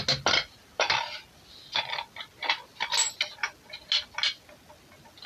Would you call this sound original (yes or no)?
yes